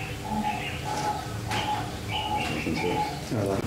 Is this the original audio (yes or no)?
yes